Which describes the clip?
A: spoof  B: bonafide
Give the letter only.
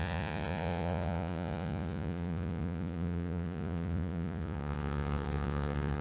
A